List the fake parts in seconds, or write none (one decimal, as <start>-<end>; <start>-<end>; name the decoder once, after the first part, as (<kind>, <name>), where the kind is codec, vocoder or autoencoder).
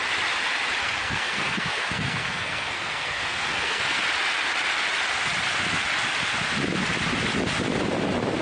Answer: 0.8-4.0 (codec, SNAC)